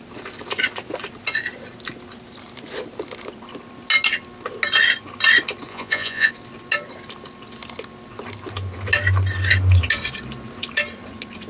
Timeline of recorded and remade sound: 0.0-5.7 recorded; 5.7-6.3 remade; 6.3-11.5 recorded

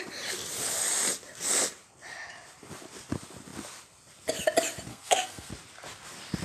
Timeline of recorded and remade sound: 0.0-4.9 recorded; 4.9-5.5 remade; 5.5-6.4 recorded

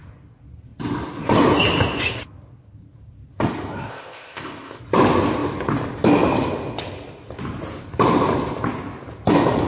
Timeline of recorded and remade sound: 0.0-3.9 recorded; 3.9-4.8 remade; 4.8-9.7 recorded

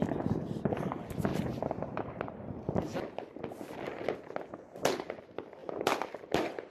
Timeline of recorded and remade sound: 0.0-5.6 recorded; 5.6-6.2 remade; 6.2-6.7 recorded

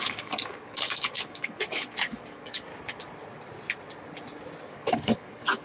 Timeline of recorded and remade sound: 0.0-2.7 remade; 2.7-4.6 recorded; 4.6-5.6 remade

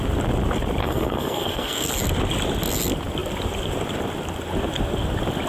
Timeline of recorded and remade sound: 0.0-0.8 recorded; 0.8-1.9 remade; 1.9-5.5 recorded

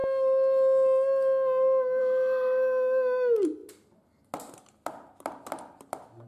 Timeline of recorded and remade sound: 0.0-6.3 recorded